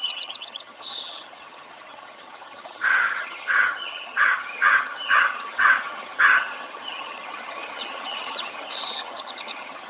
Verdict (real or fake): fake